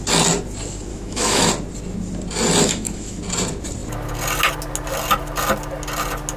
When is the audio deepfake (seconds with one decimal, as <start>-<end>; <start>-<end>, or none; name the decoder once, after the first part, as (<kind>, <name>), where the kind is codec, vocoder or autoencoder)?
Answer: 0.9-1.5 (autoencoder, DAC-VAE); 2.6-3.2